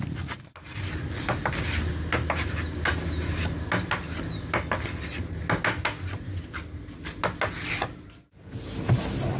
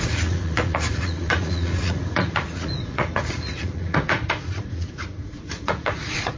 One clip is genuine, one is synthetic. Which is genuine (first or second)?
first